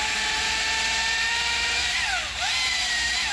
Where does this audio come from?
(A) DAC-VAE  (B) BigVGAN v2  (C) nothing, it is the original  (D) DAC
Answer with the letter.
B